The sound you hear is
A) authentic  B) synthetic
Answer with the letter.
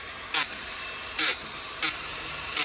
B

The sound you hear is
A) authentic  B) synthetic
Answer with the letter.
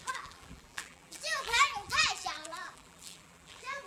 B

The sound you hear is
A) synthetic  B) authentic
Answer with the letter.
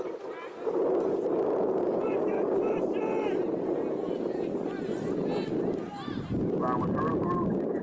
B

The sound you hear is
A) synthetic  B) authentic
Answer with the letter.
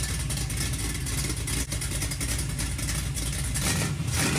B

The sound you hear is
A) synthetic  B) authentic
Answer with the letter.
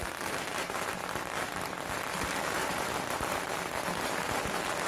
A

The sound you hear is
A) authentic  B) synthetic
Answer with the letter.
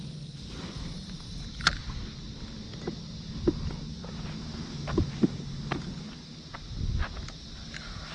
A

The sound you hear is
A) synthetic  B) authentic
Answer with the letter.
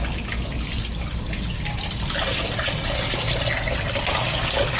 B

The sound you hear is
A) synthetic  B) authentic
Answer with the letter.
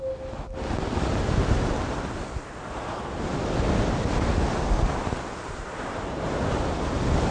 B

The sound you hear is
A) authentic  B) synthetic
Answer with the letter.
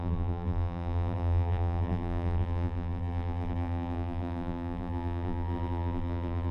B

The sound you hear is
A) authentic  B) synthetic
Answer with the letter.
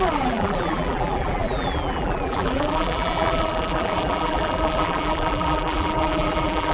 B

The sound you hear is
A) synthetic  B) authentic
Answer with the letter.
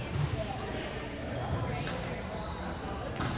A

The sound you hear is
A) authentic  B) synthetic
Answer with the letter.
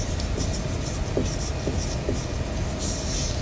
A